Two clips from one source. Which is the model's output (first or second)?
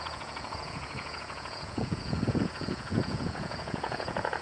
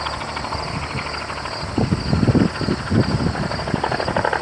first